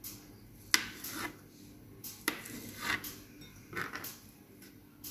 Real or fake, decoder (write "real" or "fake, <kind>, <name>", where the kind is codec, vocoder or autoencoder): real